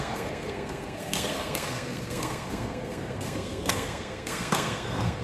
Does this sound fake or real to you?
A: fake